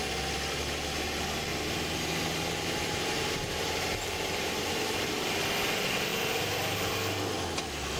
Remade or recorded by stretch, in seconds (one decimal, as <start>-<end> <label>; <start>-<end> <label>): 0.0-1.5 recorded; 1.5-5.4 remade; 5.4-6.1 recorded; 6.1-6.9 remade; 6.9-8.0 recorded